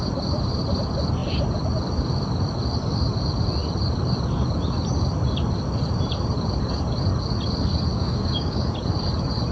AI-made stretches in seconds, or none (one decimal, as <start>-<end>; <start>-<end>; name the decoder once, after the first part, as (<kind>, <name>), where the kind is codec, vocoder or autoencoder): 7.9-8.7 (codec, DAC)